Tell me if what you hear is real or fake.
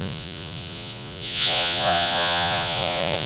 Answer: fake